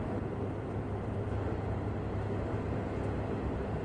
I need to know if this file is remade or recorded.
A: recorded